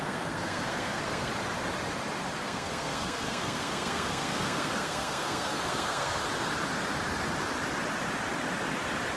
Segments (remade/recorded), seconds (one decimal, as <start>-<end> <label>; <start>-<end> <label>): 0.0-1.3 remade; 1.3-2.4 recorded; 2.4-6.2 remade; 6.2-9.2 recorded